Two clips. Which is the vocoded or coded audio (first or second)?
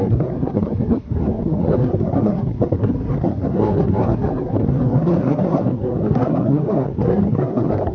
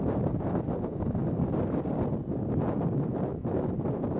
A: first